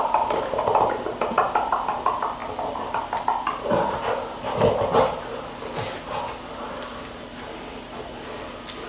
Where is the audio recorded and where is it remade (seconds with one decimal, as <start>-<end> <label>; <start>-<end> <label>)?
0.0-8.9 recorded